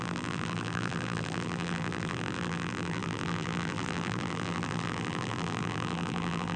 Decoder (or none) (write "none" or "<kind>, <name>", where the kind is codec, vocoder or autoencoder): vocoder, BigVGAN v2